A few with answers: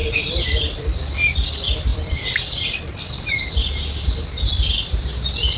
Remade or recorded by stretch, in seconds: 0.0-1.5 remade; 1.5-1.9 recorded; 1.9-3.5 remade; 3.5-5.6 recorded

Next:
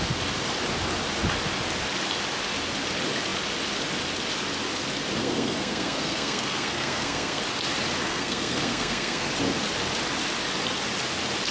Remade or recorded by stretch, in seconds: 0.0-5.2 recorded; 5.2-7.4 remade; 7.4-8.1 recorded; 8.1-9.3 remade; 9.3-11.5 recorded

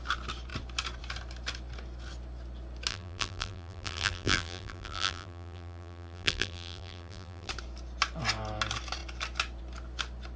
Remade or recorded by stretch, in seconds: 0.0-2.9 recorded; 2.9-7.5 remade; 7.5-10.4 recorded

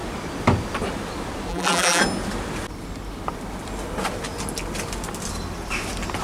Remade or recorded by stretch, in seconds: 0.0-1.5 recorded; 1.5-2.0 remade; 2.0-6.2 recorded

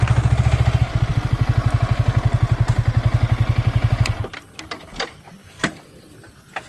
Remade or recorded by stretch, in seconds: 0.0-6.7 recorded